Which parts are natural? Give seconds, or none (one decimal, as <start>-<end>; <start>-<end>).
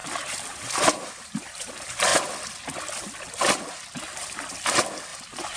1.7-5.1